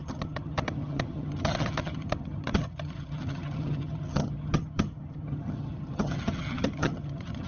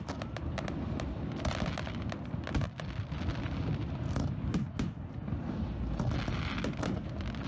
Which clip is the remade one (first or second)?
first